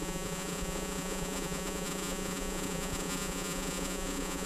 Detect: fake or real fake